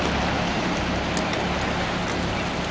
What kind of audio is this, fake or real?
real